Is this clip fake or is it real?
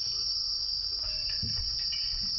real